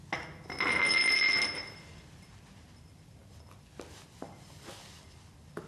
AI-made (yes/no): no